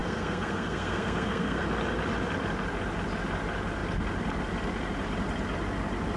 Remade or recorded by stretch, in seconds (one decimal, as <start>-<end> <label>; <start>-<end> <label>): 0.0-1.6 remade; 1.6-6.2 recorded